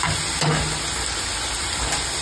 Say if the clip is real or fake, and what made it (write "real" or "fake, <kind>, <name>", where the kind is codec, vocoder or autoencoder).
real